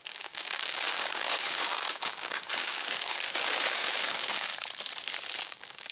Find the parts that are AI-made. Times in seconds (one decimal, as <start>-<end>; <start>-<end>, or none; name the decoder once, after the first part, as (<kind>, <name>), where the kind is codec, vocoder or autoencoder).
0.0-4.5 (codec, DAC); 5.4-5.9